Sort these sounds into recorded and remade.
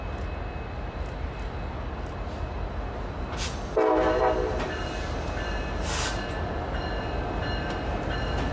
recorded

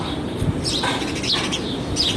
recorded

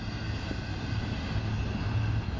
recorded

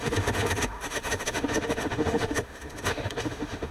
remade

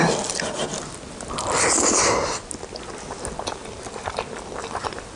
recorded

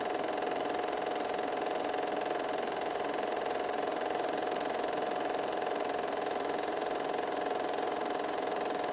remade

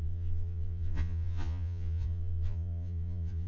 remade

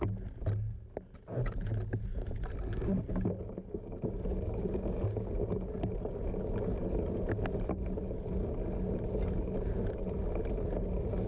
recorded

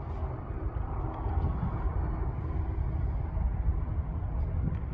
recorded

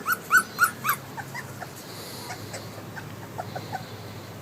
recorded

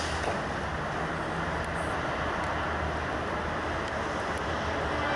recorded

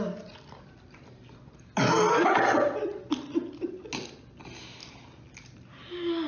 recorded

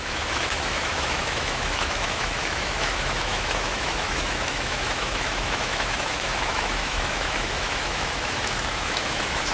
remade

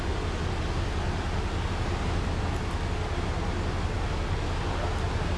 recorded